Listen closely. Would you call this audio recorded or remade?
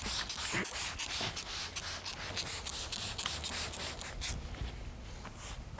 recorded